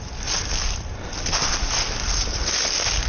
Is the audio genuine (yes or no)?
yes